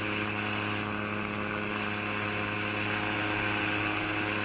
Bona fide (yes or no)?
yes